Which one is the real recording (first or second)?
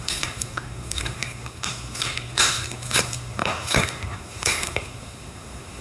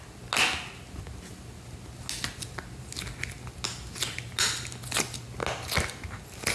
second